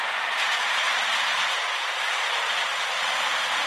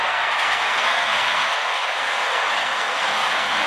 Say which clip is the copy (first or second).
second